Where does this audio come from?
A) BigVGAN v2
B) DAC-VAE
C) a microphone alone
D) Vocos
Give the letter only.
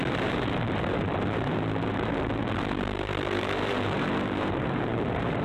A